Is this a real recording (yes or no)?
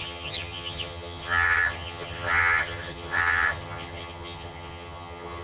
no